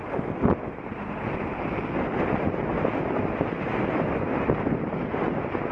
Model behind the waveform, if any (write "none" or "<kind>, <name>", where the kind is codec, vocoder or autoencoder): none